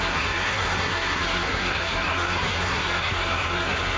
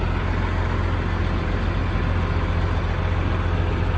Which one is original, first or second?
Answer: second